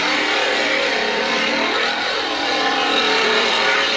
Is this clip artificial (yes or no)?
yes